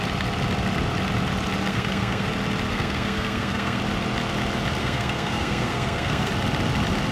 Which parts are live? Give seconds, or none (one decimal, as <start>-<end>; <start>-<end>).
0.0-1.7; 2.3-2.7; 3.8-4.8; 6.3-7.1